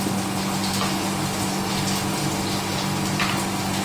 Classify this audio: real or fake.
real